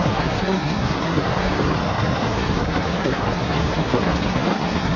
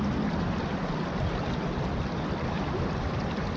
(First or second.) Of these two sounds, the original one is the second